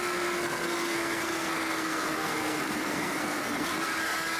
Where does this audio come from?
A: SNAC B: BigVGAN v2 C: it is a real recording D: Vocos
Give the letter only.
A